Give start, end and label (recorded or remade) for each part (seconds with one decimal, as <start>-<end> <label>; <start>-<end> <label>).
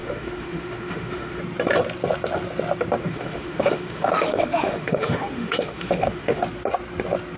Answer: 0.0-1.4 remade; 1.4-3.0 recorded; 3.0-6.4 remade; 6.4-7.4 recorded